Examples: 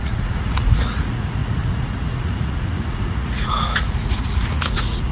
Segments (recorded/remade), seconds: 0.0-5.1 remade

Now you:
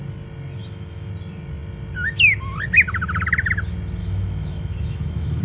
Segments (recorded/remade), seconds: 0.0-0.6 recorded; 0.6-1.1 remade; 1.1-4.0 recorded; 4.0-5.4 remade

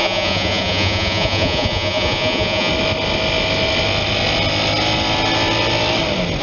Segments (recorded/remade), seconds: 0.0-2.7 remade; 2.7-6.4 recorded

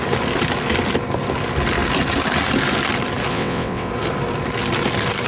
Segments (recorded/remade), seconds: 0.0-3.3 recorded; 3.3-3.9 remade; 3.9-5.3 recorded

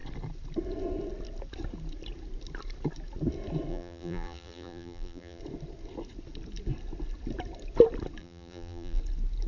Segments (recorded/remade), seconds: 0.0-3.7 recorded; 3.7-5.4 remade; 5.4-8.2 recorded; 8.2-9.0 remade; 9.0-9.5 recorded

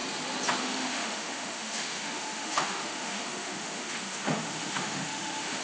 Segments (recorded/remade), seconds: 0.0-0.6 recorded; 0.6-5.6 remade